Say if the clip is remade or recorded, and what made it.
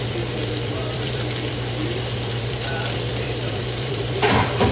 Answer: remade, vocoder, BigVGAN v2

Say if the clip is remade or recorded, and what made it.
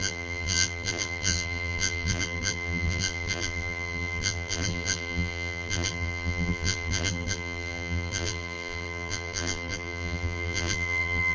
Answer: remade, vocoder, BigVGAN v2